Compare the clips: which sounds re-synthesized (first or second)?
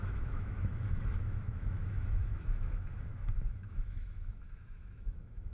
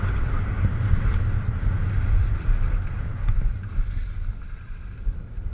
first